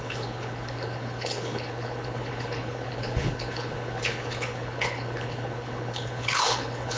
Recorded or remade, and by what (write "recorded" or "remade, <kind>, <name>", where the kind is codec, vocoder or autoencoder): remade, codec, HILCodec